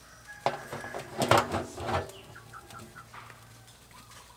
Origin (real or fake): real